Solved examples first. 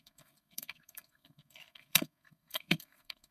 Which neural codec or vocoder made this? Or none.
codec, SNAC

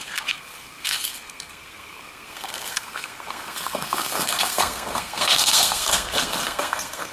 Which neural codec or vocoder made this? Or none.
codec, SNAC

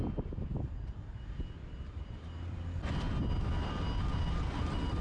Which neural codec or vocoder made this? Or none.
none